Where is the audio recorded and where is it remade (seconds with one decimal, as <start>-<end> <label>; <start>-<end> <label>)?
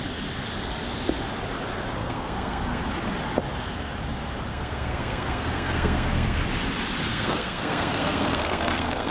0.0-2.0 recorded; 2.0-2.8 remade; 2.8-4.5 recorded; 4.5-6.4 remade; 6.4-7.1 recorded; 7.1-9.1 remade